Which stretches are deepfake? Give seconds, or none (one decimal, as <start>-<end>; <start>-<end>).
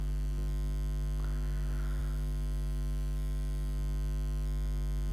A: none